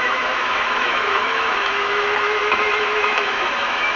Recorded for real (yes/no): no